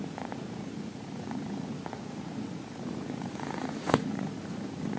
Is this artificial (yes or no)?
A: yes